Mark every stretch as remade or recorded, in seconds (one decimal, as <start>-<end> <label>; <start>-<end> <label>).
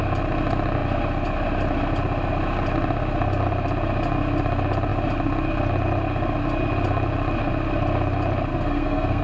0.0-8.5 recorded; 8.5-9.2 remade